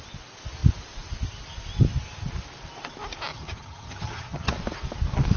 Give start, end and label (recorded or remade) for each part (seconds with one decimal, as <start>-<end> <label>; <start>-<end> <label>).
0.0-3.3 recorded; 3.3-4.5 remade; 4.5-5.4 recorded